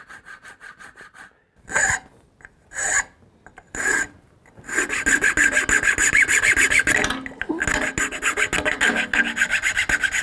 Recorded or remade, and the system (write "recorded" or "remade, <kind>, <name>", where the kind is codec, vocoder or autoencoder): recorded